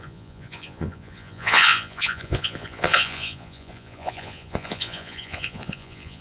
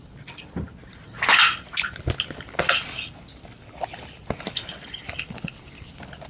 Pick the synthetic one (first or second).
first